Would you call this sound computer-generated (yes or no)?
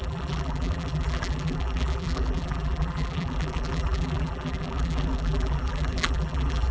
yes